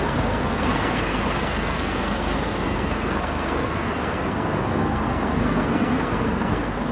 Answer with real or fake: fake